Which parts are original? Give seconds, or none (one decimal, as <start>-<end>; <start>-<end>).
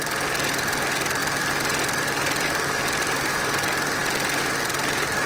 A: 0.0-5.3